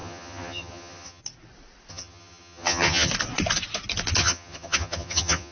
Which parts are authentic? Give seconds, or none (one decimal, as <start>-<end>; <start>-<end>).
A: 1.2-1.9; 3.1-4.2

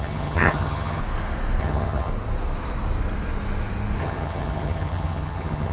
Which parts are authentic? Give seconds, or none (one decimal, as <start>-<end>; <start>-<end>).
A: 1.0-1.6; 2.1-4.0

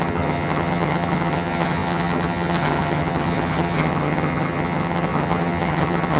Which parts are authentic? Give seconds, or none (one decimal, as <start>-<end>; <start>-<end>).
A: none